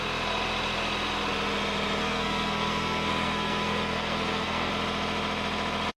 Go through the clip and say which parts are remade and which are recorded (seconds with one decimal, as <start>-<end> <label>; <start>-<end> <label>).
0.0-2.0 recorded; 2.0-4.7 remade; 4.7-6.0 recorded